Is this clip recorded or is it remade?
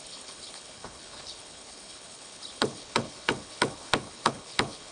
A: remade